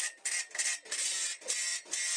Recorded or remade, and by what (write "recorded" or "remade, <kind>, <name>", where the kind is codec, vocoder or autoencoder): recorded